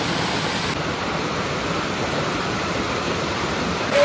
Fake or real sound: real